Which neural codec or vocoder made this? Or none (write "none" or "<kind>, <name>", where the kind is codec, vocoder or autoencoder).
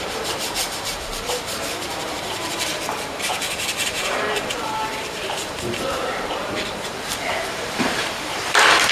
vocoder, BigVGAN v2